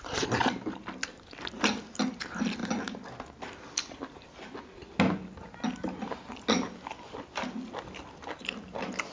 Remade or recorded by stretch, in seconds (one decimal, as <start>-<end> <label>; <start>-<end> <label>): 0.0-9.1 recorded